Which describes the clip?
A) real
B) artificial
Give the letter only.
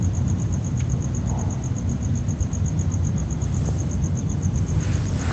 A